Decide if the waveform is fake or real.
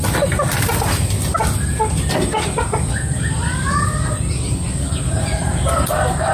real